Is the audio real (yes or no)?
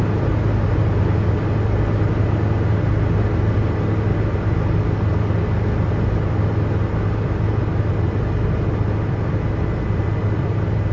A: yes